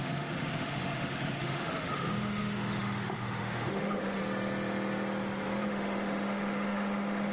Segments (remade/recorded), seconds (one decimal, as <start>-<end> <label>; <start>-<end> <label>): 0.0-4.2 remade; 4.2-5.7 recorded; 5.7-7.3 remade